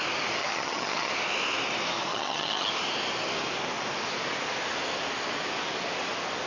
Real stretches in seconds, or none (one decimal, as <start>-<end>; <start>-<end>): 0.0-0.4; 1.1-2.1; 2.7-6.5